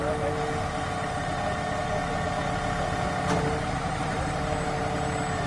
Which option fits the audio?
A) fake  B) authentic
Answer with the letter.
B